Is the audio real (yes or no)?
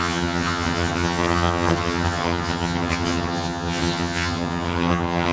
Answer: no